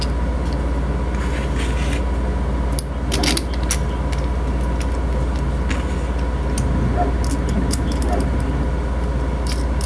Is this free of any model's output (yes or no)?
yes